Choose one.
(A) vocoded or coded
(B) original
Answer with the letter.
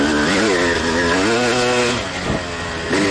B